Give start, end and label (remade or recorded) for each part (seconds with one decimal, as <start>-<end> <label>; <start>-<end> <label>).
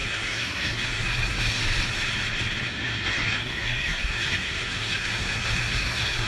0.0-1.6 remade; 1.6-2.6 recorded; 2.6-6.3 remade